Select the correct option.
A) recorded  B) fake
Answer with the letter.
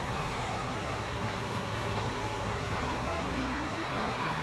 B